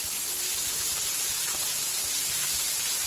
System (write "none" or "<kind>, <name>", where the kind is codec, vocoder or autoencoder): vocoder, BigVGAN v2